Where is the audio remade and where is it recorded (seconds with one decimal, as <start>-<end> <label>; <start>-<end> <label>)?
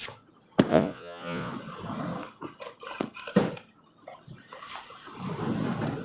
0.0-0.7 recorded; 0.7-1.5 remade; 1.5-6.0 recorded